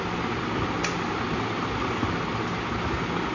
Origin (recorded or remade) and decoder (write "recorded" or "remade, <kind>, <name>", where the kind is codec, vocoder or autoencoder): recorded